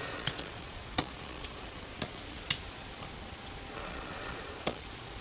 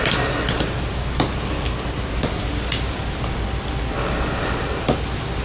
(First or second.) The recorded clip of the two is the second